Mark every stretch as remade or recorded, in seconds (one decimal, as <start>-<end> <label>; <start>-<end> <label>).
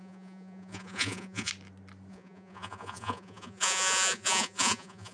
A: 0.0-1.5 remade; 1.5-2.1 recorded; 2.1-5.1 remade